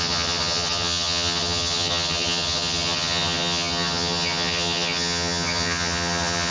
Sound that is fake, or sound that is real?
fake